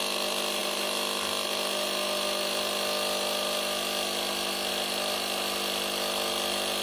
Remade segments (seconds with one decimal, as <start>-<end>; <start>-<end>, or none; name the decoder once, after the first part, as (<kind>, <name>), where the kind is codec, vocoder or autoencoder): none